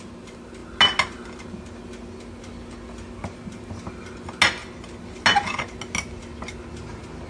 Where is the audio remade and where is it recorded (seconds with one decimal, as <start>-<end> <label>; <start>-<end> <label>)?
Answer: 0.0-7.3 recorded